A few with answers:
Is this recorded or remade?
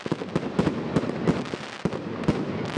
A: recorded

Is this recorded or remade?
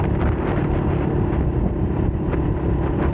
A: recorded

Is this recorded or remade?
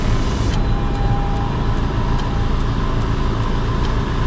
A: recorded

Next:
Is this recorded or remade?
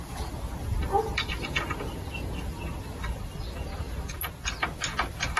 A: recorded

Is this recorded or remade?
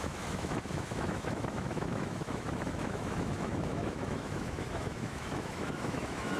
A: remade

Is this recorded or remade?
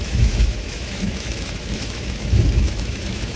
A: remade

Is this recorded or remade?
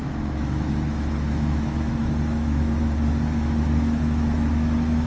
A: remade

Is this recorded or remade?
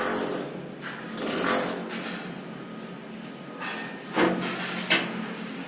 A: recorded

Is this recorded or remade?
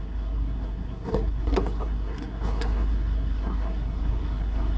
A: remade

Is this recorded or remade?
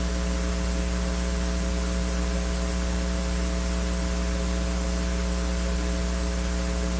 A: recorded